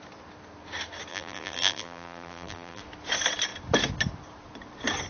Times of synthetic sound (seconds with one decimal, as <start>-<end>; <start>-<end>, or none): 1.1-2.8